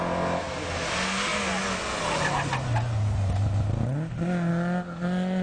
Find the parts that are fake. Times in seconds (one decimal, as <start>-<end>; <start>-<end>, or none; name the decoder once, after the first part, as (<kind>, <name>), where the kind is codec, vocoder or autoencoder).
none